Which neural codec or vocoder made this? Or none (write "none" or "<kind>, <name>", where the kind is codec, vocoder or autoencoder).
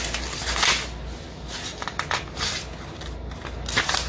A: none